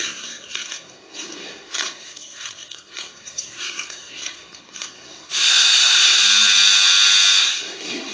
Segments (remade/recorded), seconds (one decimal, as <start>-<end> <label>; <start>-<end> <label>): 0.0-6.2 remade; 6.2-7.4 recorded; 7.4-8.1 remade